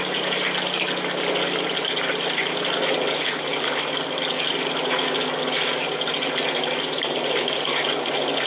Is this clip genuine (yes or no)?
yes